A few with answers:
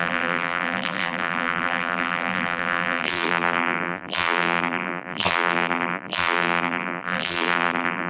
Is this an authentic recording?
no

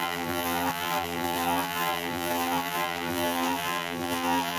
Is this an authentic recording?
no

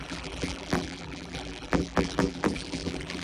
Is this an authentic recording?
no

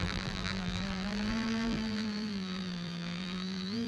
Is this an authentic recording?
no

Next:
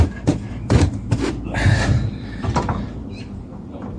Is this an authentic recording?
no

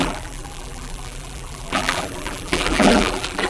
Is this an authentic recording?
no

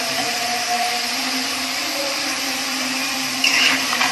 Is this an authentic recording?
no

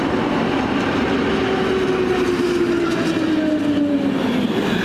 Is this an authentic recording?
yes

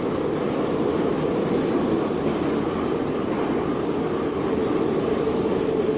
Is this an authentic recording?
no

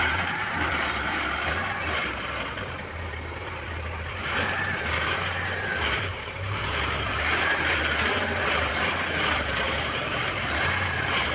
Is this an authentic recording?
no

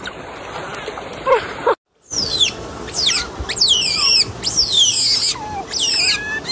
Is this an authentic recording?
yes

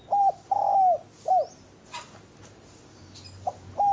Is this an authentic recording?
yes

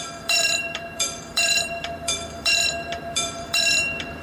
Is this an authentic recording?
no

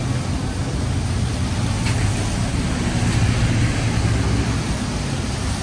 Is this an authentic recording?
yes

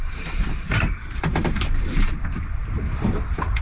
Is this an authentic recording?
no